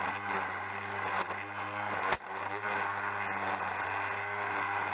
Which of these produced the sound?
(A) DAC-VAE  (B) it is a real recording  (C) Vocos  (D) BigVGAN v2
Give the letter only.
B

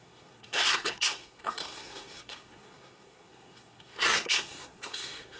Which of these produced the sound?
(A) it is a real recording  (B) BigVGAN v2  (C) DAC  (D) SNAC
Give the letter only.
D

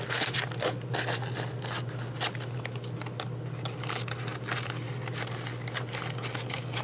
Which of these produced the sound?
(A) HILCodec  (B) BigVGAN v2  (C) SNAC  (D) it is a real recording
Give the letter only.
D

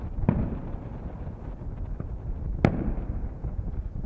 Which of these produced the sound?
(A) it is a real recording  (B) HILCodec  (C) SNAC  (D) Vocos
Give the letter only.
A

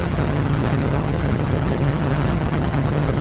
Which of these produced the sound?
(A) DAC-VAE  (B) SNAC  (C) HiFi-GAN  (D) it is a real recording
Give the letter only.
C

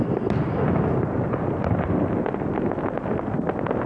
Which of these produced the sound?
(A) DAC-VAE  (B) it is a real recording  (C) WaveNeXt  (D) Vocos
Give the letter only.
B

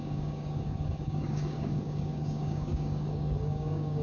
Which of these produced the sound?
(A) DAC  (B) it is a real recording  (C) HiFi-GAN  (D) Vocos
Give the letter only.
A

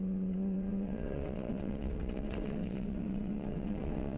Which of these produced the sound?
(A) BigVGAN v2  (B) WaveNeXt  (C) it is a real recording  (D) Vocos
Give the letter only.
B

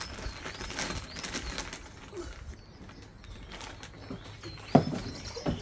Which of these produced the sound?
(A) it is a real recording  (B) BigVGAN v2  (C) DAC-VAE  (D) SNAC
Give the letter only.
A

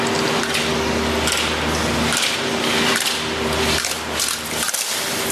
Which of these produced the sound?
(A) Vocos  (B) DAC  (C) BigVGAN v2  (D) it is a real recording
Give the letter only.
D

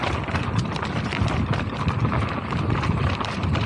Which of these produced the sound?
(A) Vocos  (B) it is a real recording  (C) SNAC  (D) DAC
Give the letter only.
B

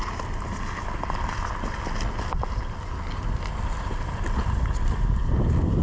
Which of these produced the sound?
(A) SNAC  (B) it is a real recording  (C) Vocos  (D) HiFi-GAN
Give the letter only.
B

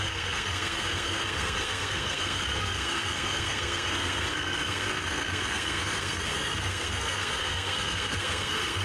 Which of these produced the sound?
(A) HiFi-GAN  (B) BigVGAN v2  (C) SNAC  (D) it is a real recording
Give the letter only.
C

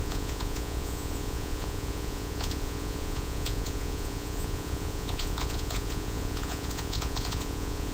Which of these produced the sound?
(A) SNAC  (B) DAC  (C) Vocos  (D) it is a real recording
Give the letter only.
C